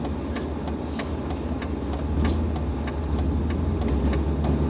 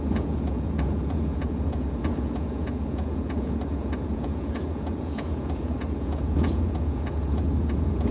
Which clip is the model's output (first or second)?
second